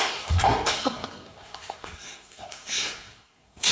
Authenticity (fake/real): fake